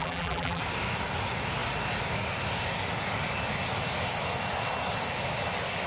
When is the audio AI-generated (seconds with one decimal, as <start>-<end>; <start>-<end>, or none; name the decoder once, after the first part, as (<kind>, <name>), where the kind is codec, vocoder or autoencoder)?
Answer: 0.0-0.6 (vocoder, BigVGAN v2)